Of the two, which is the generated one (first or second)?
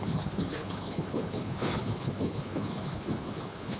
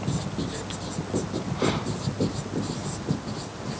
first